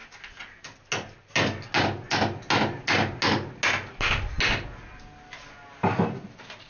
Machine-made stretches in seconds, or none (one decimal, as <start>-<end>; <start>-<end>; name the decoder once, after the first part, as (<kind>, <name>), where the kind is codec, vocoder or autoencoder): none